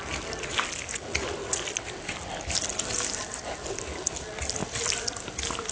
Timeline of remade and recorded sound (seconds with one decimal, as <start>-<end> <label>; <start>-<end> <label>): 0.0-1.4 recorded; 1.4-3.8 remade; 3.8-4.6 recorded; 4.6-5.2 remade; 5.2-5.7 recorded